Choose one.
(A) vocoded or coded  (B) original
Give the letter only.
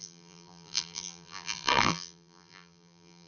A